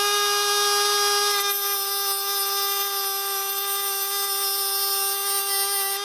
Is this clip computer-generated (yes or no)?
no